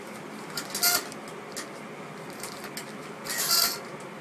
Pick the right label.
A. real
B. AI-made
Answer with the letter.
A